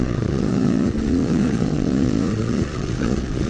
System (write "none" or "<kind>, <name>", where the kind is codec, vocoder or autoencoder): vocoder, Vocos